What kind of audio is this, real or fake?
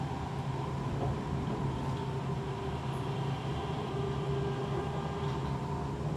real